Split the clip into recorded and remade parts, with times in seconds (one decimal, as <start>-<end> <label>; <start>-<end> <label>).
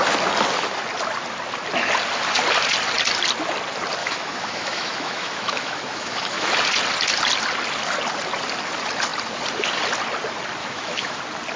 0.0-4.0 recorded; 4.0-6.5 remade; 6.5-10.6 recorded; 10.6-11.2 remade; 11.2-11.6 recorded